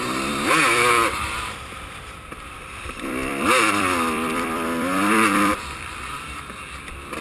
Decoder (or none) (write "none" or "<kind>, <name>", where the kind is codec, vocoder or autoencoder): vocoder, BigVGAN v2